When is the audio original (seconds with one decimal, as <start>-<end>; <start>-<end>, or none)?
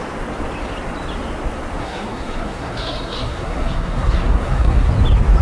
0.0-1.8; 4.9-5.4